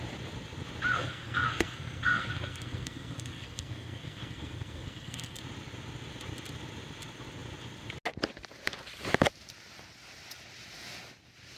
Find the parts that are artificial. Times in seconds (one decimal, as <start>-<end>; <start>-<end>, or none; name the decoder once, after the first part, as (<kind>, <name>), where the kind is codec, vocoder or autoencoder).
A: 0.9-5.4 (codec, SNAC)